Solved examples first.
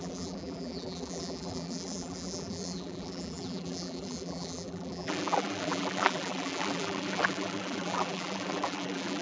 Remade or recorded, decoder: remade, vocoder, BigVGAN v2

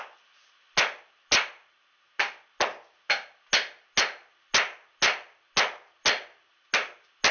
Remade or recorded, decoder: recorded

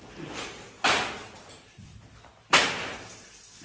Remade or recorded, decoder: recorded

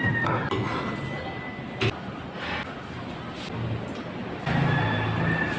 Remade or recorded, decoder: recorded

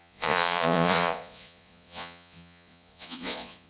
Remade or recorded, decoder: remade, vocoder, Vocos